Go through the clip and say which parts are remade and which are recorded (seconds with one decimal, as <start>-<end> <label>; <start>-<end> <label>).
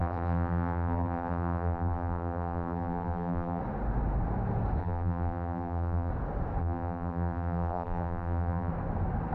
0.0-3.6 remade; 3.6-4.8 recorded; 4.8-6.1 remade; 6.1-6.6 recorded; 6.6-8.7 remade; 8.7-9.3 recorded